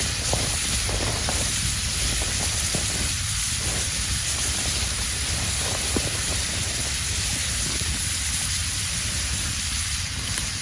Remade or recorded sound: remade